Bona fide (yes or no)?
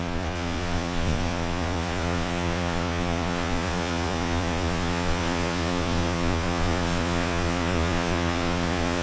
no